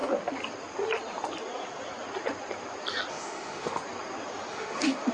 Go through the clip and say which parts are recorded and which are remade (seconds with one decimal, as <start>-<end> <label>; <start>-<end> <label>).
0.0-3.1 recorded; 3.1-3.8 remade; 3.8-4.5 recorded; 4.5-5.1 remade